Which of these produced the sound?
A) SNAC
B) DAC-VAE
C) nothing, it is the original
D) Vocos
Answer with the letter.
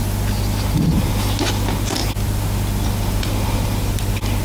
C